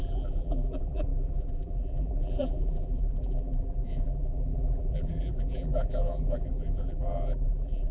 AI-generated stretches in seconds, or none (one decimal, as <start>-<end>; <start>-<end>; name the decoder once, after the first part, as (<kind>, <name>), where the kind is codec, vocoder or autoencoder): 0.0-7.9 (vocoder, BigVGAN v2)